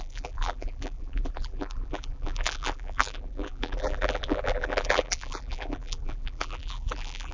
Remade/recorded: remade